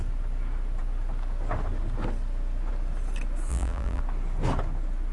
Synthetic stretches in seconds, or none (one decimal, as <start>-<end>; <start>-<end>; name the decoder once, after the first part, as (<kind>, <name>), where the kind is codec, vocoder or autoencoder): 3.5-4.0 (vocoder, BigVGAN v2)